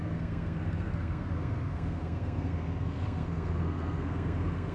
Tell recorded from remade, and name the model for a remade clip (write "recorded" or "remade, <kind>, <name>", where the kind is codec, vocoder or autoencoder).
remade, codec, SNAC